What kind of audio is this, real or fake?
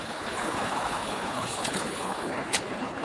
fake